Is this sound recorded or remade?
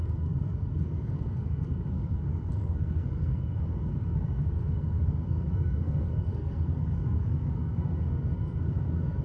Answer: remade